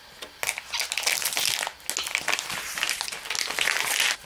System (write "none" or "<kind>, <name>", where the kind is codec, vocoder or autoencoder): none